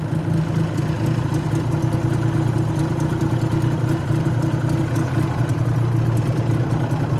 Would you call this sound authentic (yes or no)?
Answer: yes